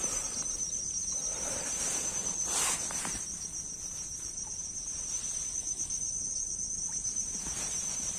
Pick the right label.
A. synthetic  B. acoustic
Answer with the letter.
A